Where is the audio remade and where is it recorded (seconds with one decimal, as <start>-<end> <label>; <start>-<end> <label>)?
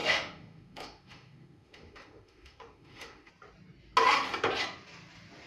0.0-3.3 remade; 3.3-5.5 recorded